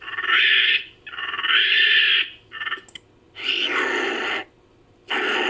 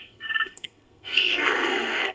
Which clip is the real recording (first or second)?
first